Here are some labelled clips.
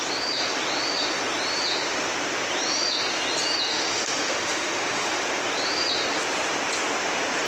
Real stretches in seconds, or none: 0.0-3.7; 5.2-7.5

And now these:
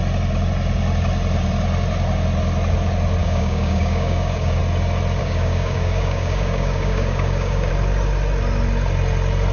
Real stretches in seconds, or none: 0.0-3.2; 4.6-5.2; 7.7-9.5